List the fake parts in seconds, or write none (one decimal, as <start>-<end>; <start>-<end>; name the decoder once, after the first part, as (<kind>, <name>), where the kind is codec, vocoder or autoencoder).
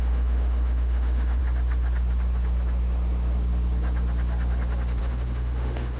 0.0-1.4 (autoencoder, DAC-VAE); 5.0-6.0